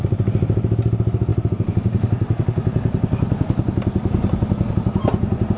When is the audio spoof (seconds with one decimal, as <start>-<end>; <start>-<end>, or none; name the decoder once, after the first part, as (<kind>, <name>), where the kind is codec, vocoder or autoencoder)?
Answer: none

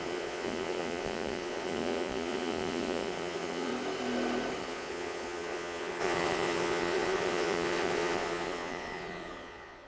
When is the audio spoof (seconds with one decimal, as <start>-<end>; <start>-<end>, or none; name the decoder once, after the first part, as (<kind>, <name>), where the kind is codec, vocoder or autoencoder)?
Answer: 0.0-3.7 (vocoder, Vocos); 4.6-9.9

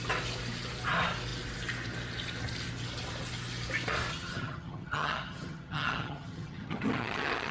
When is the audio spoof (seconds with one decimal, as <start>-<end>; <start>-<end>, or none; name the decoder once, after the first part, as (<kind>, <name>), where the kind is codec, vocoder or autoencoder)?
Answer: 4.1-7.5 (vocoder, HiFi-GAN)

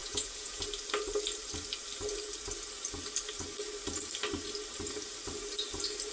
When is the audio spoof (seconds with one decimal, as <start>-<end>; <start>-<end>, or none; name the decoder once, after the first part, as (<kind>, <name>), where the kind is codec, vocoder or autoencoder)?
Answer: 0.0-0.6 (vocoder, Vocos)

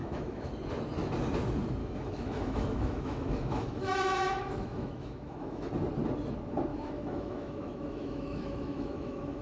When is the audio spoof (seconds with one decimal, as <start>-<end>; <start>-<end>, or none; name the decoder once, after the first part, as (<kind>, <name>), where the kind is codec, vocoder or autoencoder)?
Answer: 0.0-0.5 (autoencoder, DAC-VAE); 1.8-5.7; 6.7-9.4

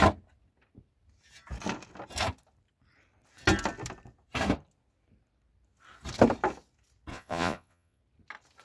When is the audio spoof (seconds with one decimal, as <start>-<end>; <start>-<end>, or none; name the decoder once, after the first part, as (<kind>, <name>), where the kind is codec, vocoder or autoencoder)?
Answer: 7.1-8.0 (vocoder, Vocos)

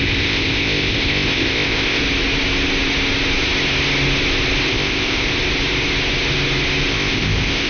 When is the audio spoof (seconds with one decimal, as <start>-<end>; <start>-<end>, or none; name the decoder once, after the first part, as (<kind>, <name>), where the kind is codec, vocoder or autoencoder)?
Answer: 0.0-2.0 (codec, ZipCodec); 4.7-5.3; 6.9-7.7